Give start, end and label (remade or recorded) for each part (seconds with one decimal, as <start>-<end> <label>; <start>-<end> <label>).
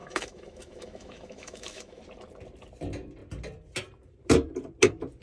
0.0-2.0 remade; 2.0-5.2 recorded